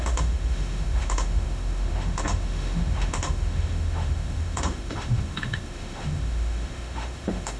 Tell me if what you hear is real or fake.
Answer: fake